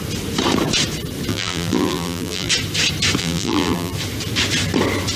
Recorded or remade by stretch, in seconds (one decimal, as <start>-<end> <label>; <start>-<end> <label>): 0.0-1.3 recorded; 1.3-2.5 remade; 2.5-3.2 recorded; 3.2-3.9 remade; 3.9-5.2 recorded